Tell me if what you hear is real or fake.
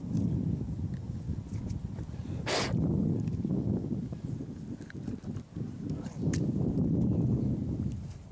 real